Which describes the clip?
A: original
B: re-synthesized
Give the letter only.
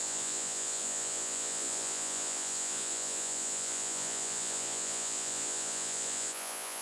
B